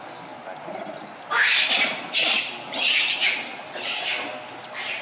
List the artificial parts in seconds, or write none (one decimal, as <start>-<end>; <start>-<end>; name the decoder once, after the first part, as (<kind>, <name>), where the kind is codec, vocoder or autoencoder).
none